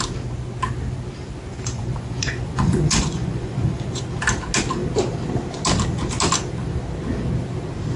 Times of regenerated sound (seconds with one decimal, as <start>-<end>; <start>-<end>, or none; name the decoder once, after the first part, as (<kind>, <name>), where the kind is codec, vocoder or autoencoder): 1.5-4.0 (vocoder, Vocos)